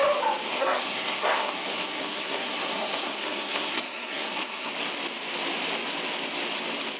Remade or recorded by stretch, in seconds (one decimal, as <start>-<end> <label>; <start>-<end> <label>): 0.0-0.5 recorded; 0.5-4.7 remade; 4.7-7.0 recorded

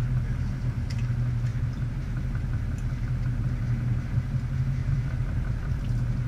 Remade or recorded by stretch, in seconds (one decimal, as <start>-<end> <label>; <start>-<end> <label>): 0.0-1.5 recorded; 1.5-2.0 remade; 2.0-4.8 recorded; 4.8-5.8 remade; 5.8-6.3 recorded

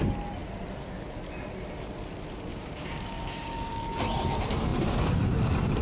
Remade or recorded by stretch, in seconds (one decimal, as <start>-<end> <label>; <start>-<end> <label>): 0.0-2.5 recorded; 2.5-4.0 remade; 4.0-5.8 recorded

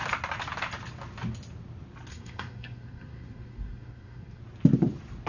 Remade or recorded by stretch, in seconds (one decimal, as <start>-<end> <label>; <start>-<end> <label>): 0.0-2.1 recorded; 2.1-4.4 remade; 4.4-5.3 recorded

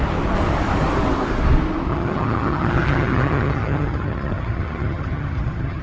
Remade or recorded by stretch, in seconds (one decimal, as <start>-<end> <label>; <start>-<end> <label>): 0.0-1.9 recorded; 1.9-5.8 remade

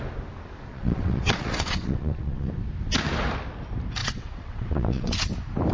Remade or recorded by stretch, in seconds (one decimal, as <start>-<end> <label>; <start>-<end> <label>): 0.0-0.7 recorded; 0.7-2.5 remade; 2.5-4.0 recorded; 4.0-5.3 remade; 5.3-5.7 recorded

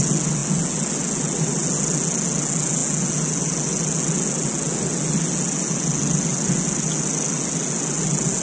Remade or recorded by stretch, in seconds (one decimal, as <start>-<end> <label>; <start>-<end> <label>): 0.0-8.4 recorded

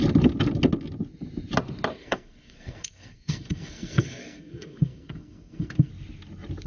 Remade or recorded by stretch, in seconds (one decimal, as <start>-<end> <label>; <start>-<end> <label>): 0.0-1.9 recorded; 1.9-5.9 remade; 5.9-6.7 recorded